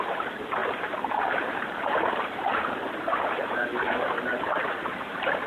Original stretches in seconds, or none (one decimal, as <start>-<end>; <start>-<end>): none